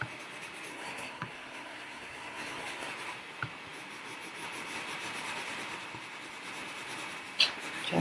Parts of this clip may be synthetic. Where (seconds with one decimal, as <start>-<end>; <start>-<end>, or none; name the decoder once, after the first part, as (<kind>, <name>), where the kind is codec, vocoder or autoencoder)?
0.7-2.9 (codec, SNAC)